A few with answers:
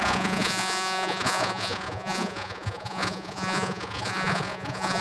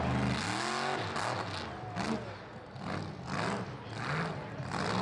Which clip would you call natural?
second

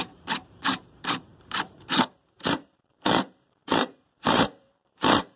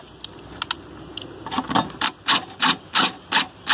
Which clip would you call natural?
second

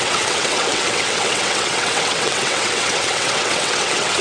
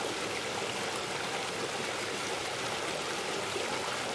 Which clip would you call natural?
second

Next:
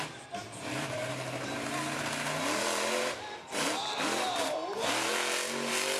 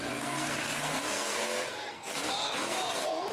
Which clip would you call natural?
first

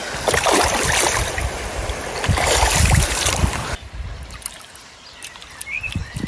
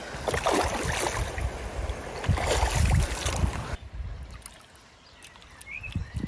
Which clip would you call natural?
second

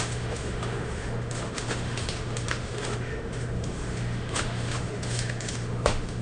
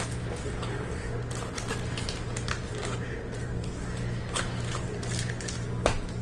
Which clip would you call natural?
second